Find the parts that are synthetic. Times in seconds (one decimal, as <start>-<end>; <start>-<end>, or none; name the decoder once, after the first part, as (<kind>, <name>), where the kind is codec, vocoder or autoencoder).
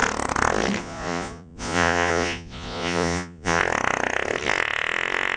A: 0.8-3.6 (vocoder, Vocos)